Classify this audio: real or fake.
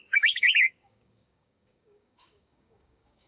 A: fake